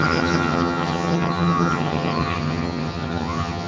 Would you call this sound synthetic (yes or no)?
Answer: yes